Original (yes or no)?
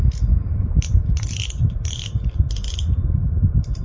yes